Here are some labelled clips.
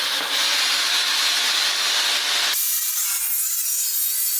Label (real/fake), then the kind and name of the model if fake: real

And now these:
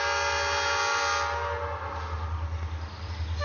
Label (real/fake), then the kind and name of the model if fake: real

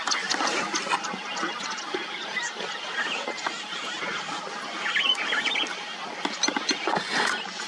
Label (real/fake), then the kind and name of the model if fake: real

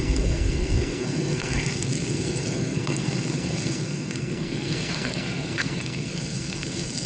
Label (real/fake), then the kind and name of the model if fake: fake, codec, SNAC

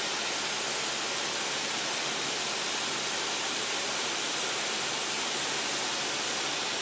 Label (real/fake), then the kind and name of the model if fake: real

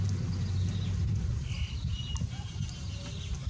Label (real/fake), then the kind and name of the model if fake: real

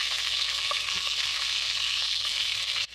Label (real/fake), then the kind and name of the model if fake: fake, codec, SNAC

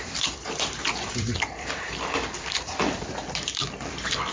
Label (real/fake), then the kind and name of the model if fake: fake, vocoder, BigVGAN v2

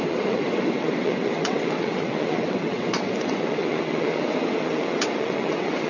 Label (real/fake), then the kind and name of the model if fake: fake, vocoder, WaveNeXt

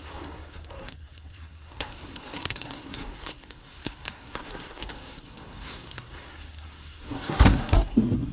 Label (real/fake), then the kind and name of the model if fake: fake, codec, SNAC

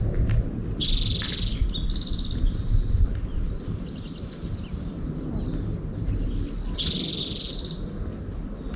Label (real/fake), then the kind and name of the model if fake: real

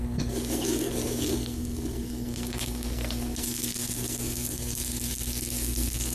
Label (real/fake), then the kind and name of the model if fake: fake, codec, SNAC